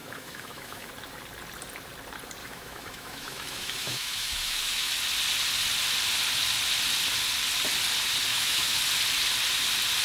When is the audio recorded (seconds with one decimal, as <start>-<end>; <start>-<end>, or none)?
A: 0.9-2.4; 4.9-8.3; 8.8-10.0